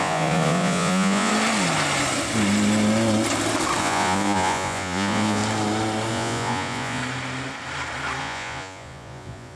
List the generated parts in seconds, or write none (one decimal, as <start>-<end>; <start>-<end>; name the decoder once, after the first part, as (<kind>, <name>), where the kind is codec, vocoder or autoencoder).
0.0-1.3 (vocoder, Vocos); 3.8-5.4; 6.1-7.0; 8.2-9.6